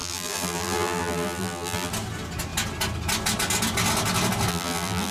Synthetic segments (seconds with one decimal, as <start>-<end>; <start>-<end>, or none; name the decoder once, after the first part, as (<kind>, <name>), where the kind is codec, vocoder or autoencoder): 0.0-1.9 (vocoder, BigVGAN v2); 4.5-5.1